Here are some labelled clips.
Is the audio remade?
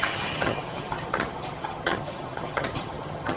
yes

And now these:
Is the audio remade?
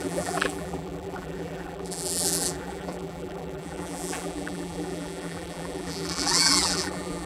yes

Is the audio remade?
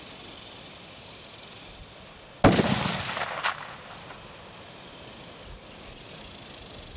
no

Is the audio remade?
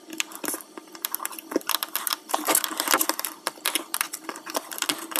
no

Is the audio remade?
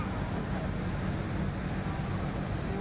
no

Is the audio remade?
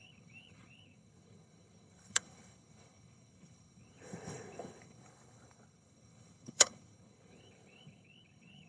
yes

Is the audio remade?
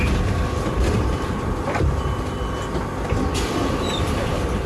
yes